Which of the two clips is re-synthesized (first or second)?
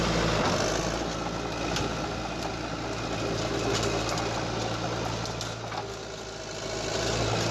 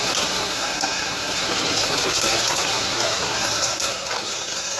second